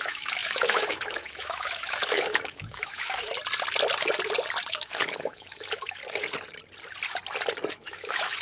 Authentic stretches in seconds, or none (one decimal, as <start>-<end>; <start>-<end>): 3.4-4.7; 6.0-7.7